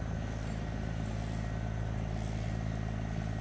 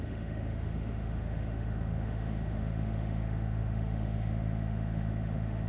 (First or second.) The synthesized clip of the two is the second